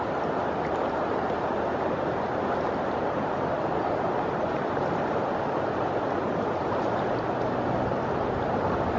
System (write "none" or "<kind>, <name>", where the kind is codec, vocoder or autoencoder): none